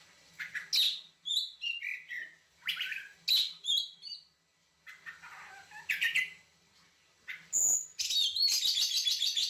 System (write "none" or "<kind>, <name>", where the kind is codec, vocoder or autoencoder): none